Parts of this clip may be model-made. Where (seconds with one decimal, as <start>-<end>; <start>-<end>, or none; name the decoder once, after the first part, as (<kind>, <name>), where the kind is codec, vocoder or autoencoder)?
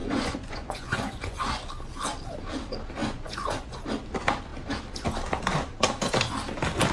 0.0-1.6 (vocoder, Vocos); 3.0-3.8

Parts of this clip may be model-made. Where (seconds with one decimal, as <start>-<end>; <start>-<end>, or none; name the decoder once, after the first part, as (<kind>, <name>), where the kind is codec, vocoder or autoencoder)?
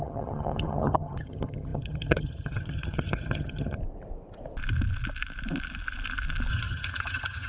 0.0-3.8 (vocoder, HiFi-GAN); 6.5-7.5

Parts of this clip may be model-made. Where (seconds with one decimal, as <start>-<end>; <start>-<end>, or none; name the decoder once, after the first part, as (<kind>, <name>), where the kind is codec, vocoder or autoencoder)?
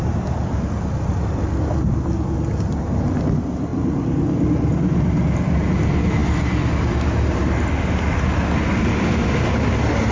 none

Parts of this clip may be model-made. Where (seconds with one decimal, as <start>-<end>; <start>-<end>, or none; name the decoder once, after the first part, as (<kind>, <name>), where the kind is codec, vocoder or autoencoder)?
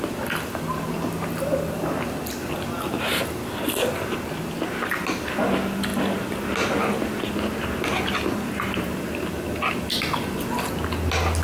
none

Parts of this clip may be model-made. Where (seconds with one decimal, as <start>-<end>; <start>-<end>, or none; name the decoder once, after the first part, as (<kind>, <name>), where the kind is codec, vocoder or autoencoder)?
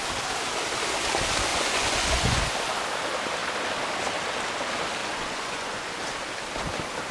1.5-2.4 (vocoder, Vocos); 5.0-6.0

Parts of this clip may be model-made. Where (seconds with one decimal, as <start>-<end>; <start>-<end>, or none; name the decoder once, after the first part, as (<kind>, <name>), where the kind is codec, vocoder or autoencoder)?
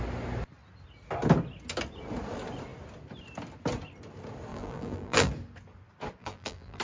4.5-5.3 (vocoder, BigVGAN v2); 6.2-6.8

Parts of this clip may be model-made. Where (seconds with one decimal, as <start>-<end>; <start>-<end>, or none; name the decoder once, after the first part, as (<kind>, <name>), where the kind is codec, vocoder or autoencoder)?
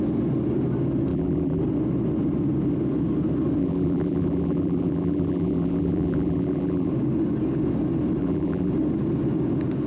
1.1-1.6 (vocoder, BigVGAN v2); 3.6-6.9; 8.2-8.7